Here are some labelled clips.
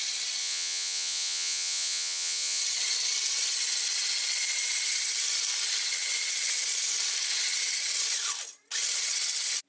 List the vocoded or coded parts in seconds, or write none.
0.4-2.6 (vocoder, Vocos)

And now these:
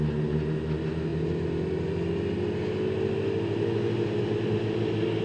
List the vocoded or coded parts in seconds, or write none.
none

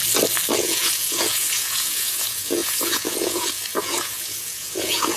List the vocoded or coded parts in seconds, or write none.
0.6-5.2 (vocoder, Vocos)

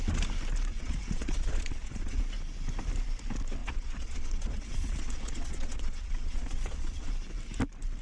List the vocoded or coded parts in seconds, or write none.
0.7-2.2 (vocoder, Vocos); 3.6-7.1

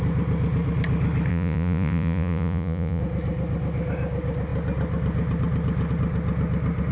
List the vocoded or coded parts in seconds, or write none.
1.3-3.0 (vocoder, Vocos)

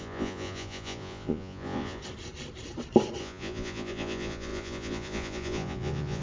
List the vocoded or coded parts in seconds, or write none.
0.0-2.0 (vocoder, Vocos); 3.2-6.2

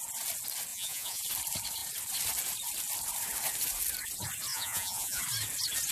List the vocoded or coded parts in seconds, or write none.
0.7-1.2 (vocoder, Vocos); 4.5-5.2